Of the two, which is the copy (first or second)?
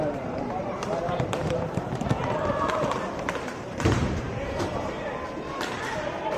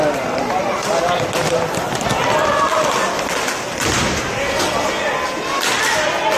first